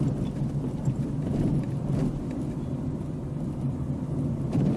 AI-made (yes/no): no